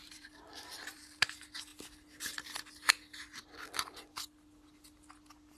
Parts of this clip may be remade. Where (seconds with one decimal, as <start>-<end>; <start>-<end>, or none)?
0.0-1.2